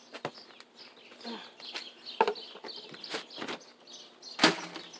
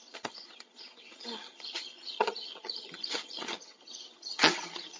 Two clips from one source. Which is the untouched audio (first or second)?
first